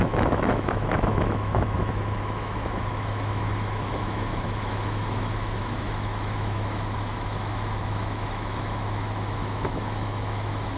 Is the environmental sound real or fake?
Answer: fake